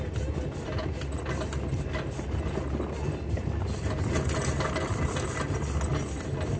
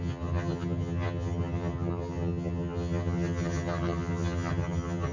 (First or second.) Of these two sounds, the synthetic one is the second